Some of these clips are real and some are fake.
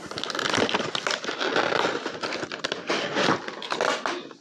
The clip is real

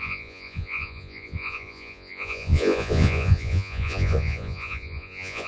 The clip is fake